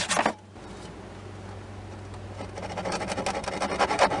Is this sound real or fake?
real